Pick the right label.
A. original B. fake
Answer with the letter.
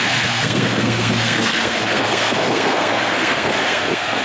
B